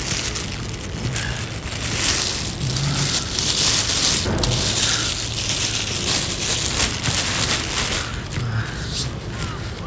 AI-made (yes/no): no